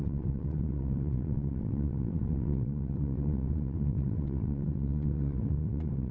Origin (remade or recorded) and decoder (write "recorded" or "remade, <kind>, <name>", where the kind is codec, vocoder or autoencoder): remade, vocoder, WaveNeXt